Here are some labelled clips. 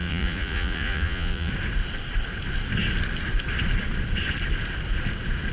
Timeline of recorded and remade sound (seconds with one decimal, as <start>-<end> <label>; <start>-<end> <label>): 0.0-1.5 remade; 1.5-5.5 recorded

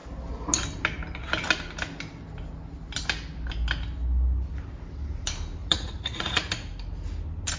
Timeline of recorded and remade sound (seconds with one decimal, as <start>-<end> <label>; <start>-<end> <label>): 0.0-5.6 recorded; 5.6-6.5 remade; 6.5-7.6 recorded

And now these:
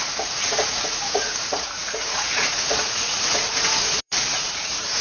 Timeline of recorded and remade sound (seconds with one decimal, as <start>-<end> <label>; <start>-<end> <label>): 0.0-5.0 remade

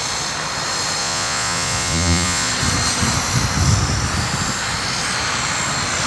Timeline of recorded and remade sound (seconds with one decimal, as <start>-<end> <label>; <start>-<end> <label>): 0.0-1.0 recorded; 1.0-2.5 remade; 2.5-6.1 recorded

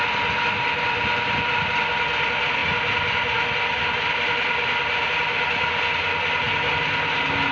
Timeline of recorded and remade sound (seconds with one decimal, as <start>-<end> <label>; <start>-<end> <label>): 0.0-7.5 recorded